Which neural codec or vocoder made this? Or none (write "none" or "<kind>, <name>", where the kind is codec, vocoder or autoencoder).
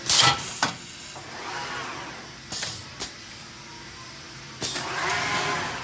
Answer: none